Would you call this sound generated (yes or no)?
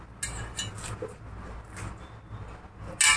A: no